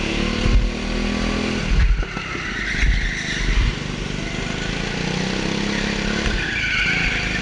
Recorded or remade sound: recorded